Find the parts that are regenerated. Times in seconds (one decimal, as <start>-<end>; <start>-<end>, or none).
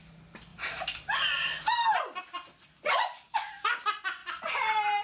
0.5-3.5; 4.2-5.0